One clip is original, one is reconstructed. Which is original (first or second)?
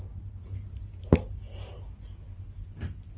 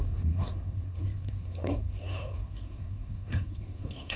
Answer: first